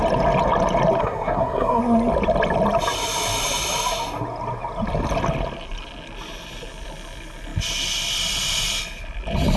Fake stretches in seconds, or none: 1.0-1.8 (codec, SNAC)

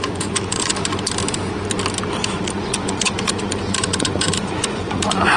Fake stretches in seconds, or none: 0.0-0.7 (vocoder, Vocos); 2.3-5.4

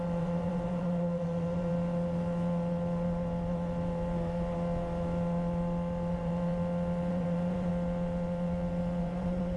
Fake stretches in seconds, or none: 0.0-1.7 (vocoder, Vocos); 6.1-6.5; 7.1-7.7; 9.0-9.6

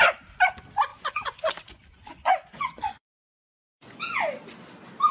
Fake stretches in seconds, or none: 0.9-4.0 (vocoder, Vocos)

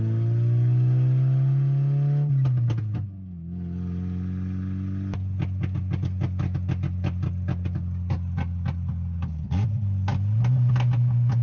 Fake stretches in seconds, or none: none

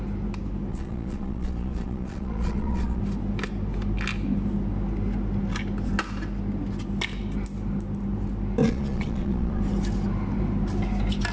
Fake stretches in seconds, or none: 0.7-3.0 (vocoder, Vocos); 8.6-9.6

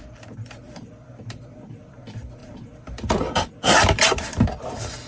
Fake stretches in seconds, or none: 0.0-5.1 (vocoder, BigVGAN v2)

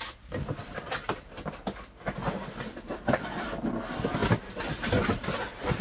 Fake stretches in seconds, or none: none